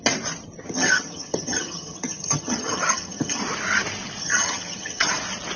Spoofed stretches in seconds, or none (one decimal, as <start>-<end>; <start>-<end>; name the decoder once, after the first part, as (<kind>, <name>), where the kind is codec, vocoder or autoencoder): 0.6-3.4 (vocoder, HiFi-GAN); 4.2-5.1